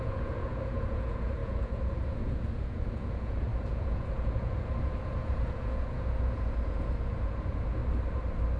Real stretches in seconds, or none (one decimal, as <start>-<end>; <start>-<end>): 7.8-8.6